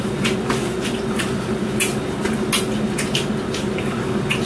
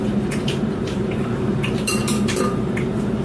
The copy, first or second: second